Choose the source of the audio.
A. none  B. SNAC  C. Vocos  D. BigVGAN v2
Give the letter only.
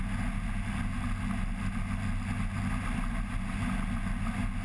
A